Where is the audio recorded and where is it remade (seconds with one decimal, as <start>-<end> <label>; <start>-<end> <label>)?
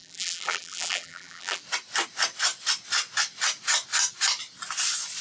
0.0-1.6 remade; 1.6-5.2 recorded